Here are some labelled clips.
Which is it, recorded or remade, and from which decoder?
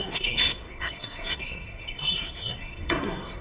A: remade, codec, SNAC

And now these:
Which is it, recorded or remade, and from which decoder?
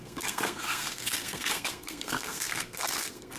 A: remade, codec, SNAC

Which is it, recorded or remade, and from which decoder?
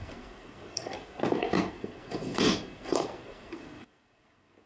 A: remade, codec, SNAC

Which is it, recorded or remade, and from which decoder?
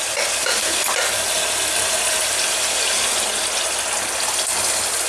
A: recorded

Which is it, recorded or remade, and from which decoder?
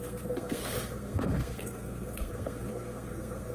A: remade, codec, SNAC